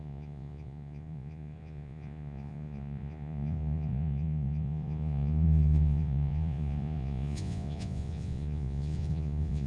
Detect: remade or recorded remade